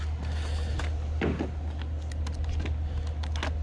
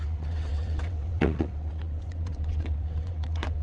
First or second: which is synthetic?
second